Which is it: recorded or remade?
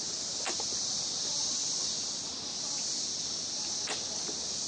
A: recorded